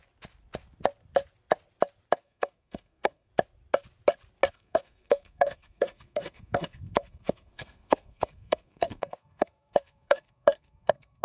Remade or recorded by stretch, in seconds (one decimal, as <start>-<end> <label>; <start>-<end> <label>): 0.0-2.2 recorded; 2.2-3.3 remade; 3.3-4.5 recorded; 4.5-11.2 remade

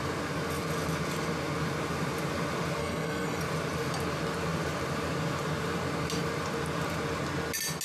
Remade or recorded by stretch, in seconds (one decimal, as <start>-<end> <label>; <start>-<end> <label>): 0.0-2.8 recorded; 2.8-3.4 remade; 3.4-7.8 recorded

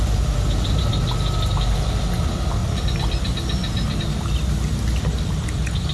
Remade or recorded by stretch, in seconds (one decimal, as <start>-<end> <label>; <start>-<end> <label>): 0.0-5.9 recorded

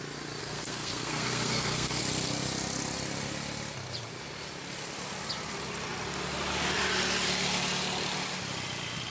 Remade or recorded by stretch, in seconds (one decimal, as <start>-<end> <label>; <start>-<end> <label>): 0.0-0.4 recorded; 0.4-2.0 remade; 2.0-9.1 recorded

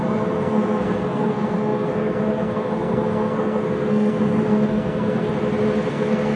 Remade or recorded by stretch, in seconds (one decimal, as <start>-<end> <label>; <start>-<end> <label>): 0.0-5.3 remade; 5.3-5.9 recorded; 5.9-6.4 remade

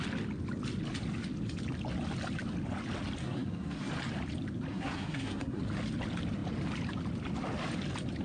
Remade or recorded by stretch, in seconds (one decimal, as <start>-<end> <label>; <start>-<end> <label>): 0.0-3.2 recorded; 3.2-3.9 remade; 3.9-4.7 recorded; 4.7-5.6 remade; 5.6-8.2 recorded